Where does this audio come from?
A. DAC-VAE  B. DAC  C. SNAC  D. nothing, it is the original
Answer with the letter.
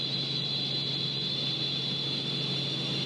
D